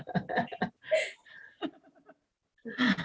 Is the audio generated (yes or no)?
no